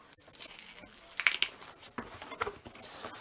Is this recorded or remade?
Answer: recorded